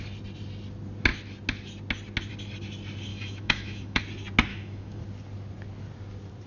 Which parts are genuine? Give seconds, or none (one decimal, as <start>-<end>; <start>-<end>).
0.0-3.1; 4.0-4.5; 5.0-6.5